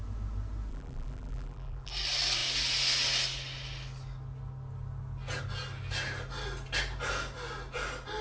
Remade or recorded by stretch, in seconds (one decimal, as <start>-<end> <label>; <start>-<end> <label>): 0.0-0.7 recorded; 0.7-1.9 remade; 1.9-8.2 recorded